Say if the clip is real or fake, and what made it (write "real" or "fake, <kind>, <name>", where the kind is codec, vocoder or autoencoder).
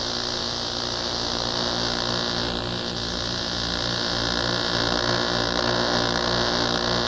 real